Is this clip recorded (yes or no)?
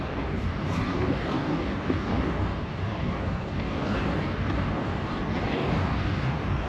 no